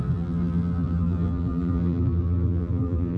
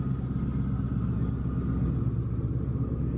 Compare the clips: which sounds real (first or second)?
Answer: second